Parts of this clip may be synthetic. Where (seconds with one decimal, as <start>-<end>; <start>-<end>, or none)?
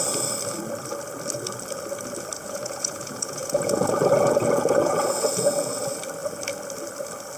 2.4-5.8